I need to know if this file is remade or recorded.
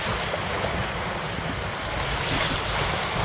recorded